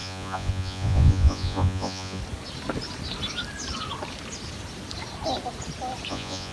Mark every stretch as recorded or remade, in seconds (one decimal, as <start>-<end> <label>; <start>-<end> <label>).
0.0-2.2 remade; 2.2-6.1 recorded; 6.1-6.5 remade